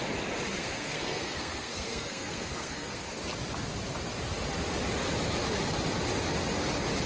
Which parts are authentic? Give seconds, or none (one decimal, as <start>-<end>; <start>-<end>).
0.0-0.6; 3.0-7.1